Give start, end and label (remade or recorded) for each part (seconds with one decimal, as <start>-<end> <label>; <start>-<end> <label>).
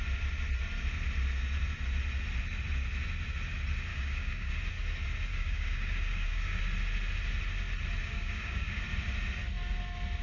0.0-3.9 recorded; 3.9-4.6 remade; 4.6-5.3 recorded; 5.3-6.6 remade; 6.6-8.0 recorded; 8.0-8.8 remade; 8.8-10.2 recorded